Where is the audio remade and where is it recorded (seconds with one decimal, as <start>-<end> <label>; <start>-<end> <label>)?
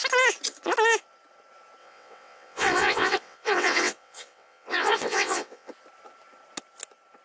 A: 0.0-1.8 recorded; 1.8-5.7 remade; 5.7-7.2 recorded